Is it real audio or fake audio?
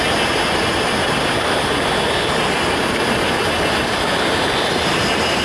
real